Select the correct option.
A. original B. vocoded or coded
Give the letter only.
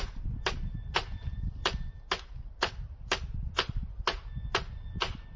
A